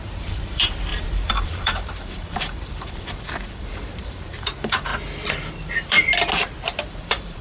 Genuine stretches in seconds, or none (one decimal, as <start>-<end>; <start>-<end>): 4.9-6.8